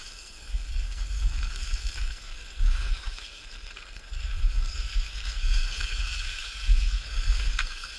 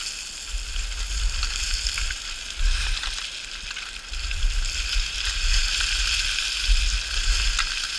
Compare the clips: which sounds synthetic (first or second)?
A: first